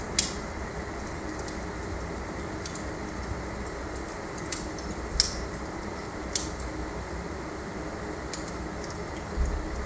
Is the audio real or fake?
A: real